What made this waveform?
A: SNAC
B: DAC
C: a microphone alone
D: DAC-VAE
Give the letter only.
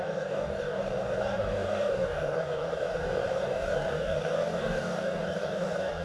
B